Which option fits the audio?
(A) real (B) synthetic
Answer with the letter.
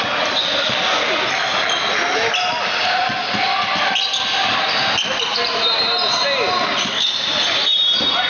A